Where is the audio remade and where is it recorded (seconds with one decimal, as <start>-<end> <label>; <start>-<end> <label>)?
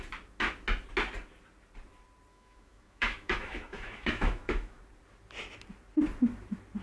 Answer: 0.0-2.3 recorded; 2.3-4.8 remade; 4.8-6.8 recorded